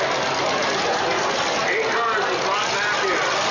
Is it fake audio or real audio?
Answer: real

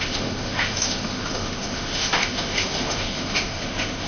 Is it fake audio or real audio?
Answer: fake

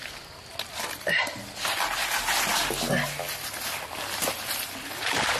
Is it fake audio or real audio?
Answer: real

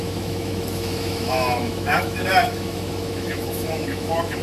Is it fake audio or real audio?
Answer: fake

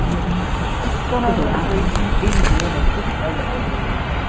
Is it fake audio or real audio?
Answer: real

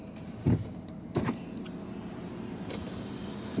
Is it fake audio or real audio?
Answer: real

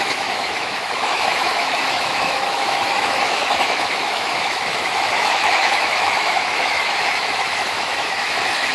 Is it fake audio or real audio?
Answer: fake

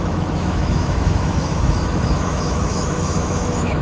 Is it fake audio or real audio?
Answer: fake